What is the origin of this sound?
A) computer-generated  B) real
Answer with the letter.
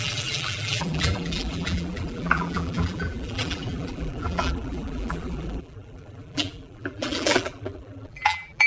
A